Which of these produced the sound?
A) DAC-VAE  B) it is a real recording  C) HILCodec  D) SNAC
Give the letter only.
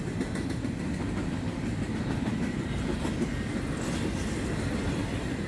B